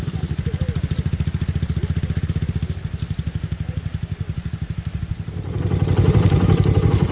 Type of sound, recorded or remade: recorded